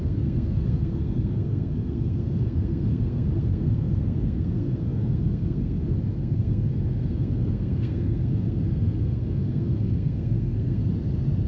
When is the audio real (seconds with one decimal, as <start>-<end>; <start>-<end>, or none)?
10.8-11.5